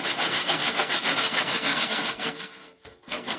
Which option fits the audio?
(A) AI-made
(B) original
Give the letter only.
A